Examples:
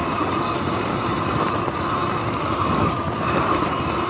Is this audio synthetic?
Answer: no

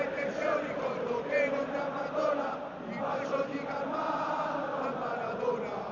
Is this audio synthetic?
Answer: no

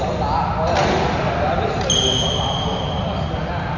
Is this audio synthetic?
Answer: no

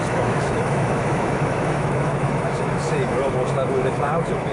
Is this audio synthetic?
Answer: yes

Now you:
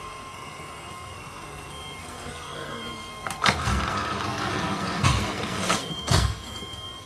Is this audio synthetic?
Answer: yes